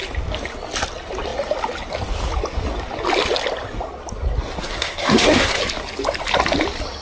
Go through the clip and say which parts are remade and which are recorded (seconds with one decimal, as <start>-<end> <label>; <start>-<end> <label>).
0.0-4.6 recorded; 4.6-5.6 remade; 5.6-7.0 recorded